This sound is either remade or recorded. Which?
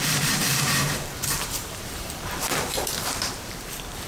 remade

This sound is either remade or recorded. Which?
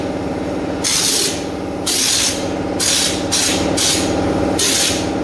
recorded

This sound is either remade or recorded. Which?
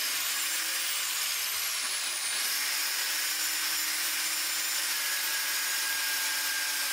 recorded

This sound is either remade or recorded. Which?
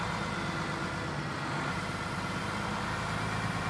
recorded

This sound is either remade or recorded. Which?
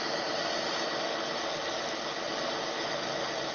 recorded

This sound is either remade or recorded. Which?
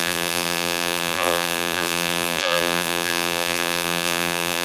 remade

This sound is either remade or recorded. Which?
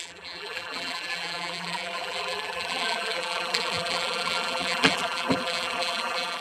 remade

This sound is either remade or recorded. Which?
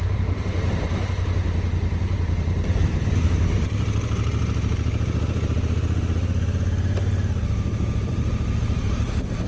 remade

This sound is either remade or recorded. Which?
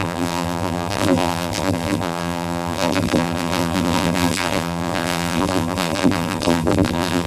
remade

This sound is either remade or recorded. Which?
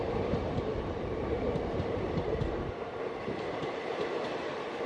remade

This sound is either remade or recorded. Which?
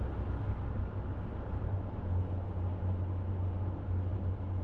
recorded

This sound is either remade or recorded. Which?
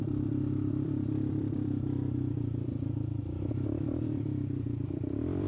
remade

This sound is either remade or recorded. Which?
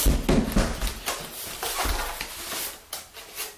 recorded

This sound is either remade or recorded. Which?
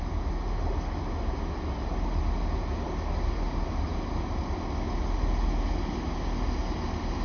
recorded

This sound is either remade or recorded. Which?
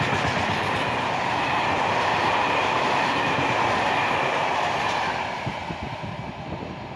recorded